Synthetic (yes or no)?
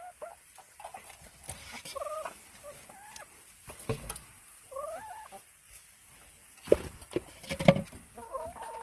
no